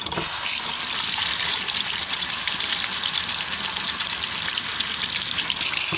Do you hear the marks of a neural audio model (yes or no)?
yes